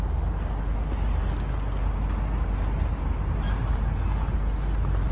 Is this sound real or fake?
real